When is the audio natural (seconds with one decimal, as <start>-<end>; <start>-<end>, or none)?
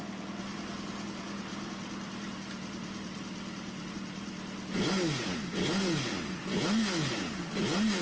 0.0-1.5; 3.9-5.3; 5.8-8.0